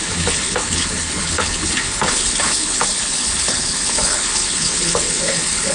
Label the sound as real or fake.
fake